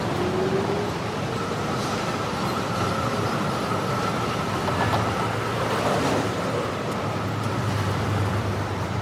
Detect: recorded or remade recorded